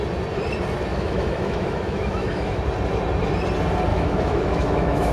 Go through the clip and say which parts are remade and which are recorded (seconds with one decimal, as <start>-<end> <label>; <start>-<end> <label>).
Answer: 0.0-0.9 recorded; 0.9-2.6 remade; 2.6-3.9 recorded; 3.9-5.1 remade

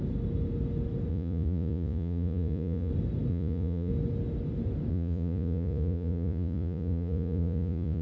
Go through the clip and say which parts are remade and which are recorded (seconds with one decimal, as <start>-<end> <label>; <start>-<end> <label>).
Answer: 0.0-1.1 recorded; 1.1-2.9 remade; 2.9-3.3 recorded; 3.3-3.9 remade; 3.9-4.9 recorded; 4.9-8.0 remade

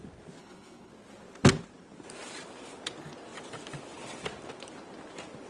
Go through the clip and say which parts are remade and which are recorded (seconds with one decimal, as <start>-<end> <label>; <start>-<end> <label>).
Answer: 0.0-0.4 recorded; 0.4-0.9 remade; 0.9-5.5 recorded

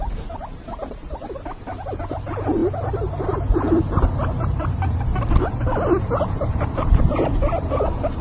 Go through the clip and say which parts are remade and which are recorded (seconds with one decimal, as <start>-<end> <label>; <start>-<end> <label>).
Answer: 0.0-2.6 remade; 2.6-5.2 recorded; 5.2-8.2 remade

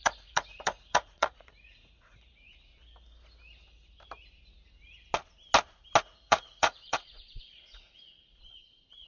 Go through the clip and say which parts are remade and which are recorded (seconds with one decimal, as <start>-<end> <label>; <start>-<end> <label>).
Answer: 0.0-2.5 remade; 2.5-6.0 recorded; 6.0-9.1 remade